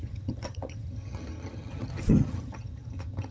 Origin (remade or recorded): remade